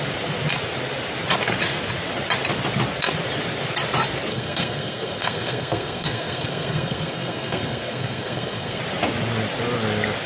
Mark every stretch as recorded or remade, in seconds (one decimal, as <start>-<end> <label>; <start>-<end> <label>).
0.0-4.3 recorded; 4.3-8.8 remade; 8.8-10.3 recorded